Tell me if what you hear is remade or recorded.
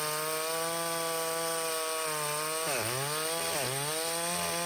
recorded